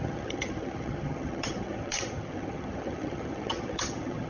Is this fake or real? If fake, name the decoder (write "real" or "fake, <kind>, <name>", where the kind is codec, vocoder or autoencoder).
fake, vocoder, HiFi-GAN